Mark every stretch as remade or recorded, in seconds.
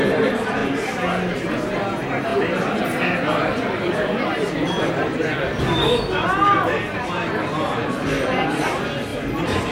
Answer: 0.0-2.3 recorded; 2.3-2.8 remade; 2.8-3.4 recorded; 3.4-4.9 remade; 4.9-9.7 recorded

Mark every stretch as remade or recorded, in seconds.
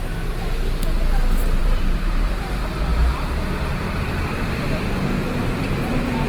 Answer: 0.0-1.6 recorded; 1.6-2.5 remade; 2.5-2.9 recorded; 2.9-6.3 remade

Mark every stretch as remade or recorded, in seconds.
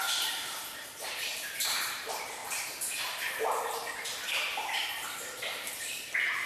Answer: 0.0-6.5 remade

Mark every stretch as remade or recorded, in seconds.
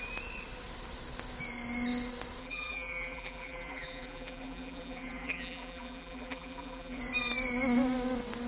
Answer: 0.0-2.4 recorded; 2.4-7.0 remade; 7.0-8.5 recorded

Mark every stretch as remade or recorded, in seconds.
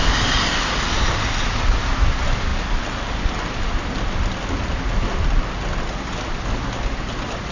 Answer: 0.0-0.8 remade; 0.8-2.5 recorded; 2.5-3.1 remade; 3.1-7.5 recorded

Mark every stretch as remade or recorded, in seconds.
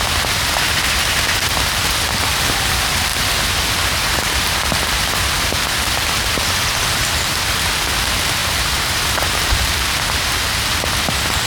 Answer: 0.0-8.4 recorded; 8.4-9.8 remade; 9.8-11.5 recorded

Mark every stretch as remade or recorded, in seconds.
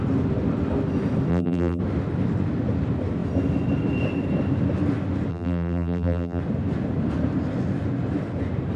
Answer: 0.0-1.3 recorded; 1.3-1.8 remade; 1.8-5.3 recorded; 5.3-6.4 remade; 6.4-8.8 recorded